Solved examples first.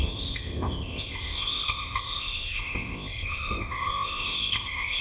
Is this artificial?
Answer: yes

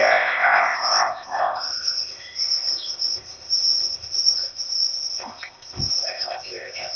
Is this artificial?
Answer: yes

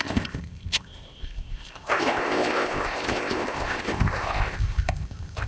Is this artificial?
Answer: yes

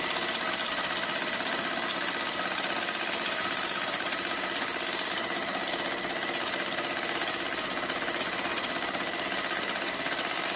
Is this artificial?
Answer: no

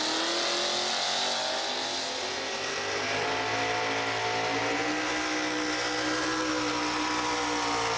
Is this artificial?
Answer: no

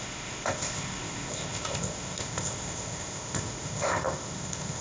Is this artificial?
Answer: yes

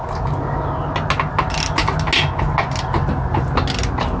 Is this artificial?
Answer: no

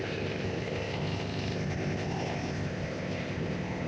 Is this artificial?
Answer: yes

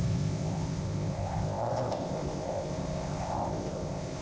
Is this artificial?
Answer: yes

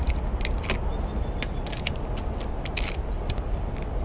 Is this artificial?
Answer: no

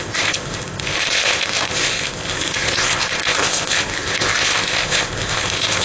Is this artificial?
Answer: yes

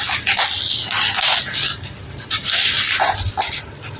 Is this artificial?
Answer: no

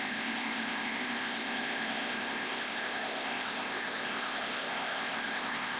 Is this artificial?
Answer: yes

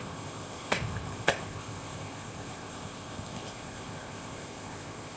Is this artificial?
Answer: yes